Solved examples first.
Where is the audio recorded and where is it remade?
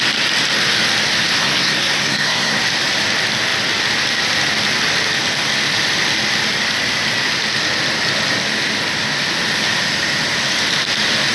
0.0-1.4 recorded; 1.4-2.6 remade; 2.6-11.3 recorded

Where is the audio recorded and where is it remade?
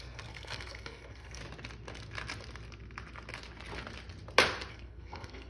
0.0-1.4 remade; 1.4-4.7 recorded; 4.7-5.5 remade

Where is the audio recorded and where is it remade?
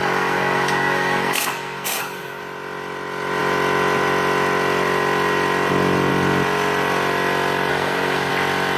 0.0-2.4 remade; 2.4-7.7 recorded; 7.7-8.3 remade; 8.3-8.8 recorded